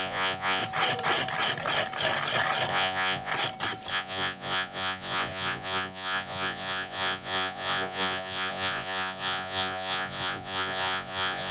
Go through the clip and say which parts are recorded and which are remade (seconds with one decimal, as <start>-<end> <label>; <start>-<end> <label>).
0.0-0.6 remade; 0.6-2.7 recorded; 2.7-3.3 remade; 3.3-3.9 recorded; 3.9-11.5 remade